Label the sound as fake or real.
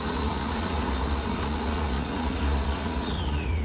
fake